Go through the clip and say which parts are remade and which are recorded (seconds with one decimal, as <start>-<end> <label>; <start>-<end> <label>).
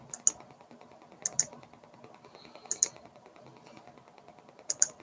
0.0-5.0 recorded